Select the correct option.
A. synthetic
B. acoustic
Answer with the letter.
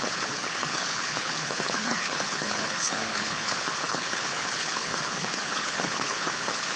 A